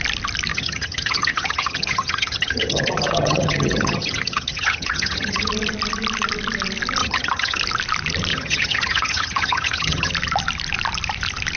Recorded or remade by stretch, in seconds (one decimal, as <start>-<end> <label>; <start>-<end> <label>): 0.0-0.5 recorded; 0.5-5.5 remade; 5.5-7.0 recorded; 7.0-7.6 remade; 7.6-8.3 recorded; 8.3-10.1 remade; 10.1-11.6 recorded